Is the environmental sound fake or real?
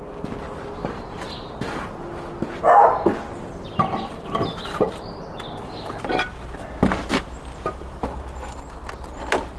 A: real